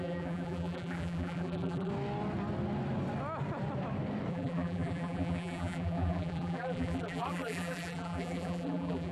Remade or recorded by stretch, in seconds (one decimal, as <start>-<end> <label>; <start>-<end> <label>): 0.0-1.9 remade; 1.9-4.3 recorded; 4.3-9.1 remade

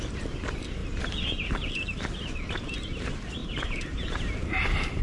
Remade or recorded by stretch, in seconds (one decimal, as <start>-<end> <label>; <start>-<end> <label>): 0.0-0.8 recorded; 0.8-2.0 remade; 2.0-3.4 recorded; 3.4-5.0 remade

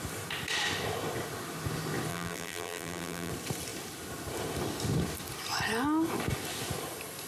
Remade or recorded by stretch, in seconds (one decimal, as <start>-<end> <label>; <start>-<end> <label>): 0.0-2.1 recorded; 2.1-3.3 remade; 3.3-7.3 recorded

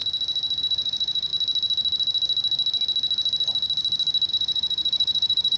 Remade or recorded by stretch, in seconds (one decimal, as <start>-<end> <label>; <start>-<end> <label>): 0.0-0.6 recorded; 0.6-1.3 remade; 1.3-4.3 recorded; 4.3-5.6 remade